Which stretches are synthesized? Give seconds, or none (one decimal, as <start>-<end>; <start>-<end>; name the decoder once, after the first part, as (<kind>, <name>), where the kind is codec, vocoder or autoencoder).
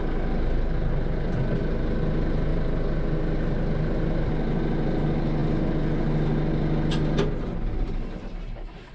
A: none